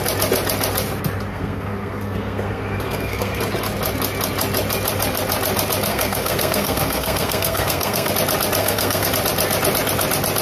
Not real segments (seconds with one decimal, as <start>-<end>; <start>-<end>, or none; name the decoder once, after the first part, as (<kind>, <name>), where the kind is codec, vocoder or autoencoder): 1.3-3.4 (codec, SNAC); 5.9-8.1; 8.6-9.1